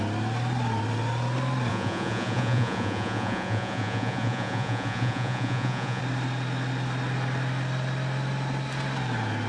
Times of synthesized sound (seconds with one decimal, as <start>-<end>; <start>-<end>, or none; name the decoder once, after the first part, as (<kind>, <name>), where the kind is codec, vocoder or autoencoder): 1.7-6.0 (vocoder, Vocos)